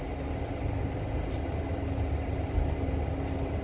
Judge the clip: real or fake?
real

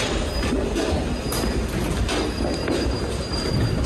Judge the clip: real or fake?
real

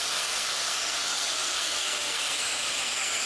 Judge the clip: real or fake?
fake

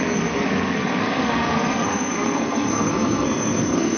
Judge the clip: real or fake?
fake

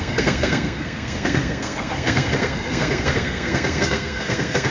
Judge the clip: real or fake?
fake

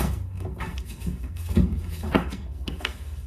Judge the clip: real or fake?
fake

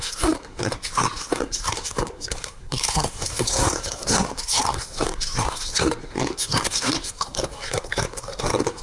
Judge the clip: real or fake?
fake